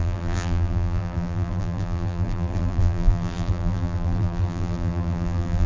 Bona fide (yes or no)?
no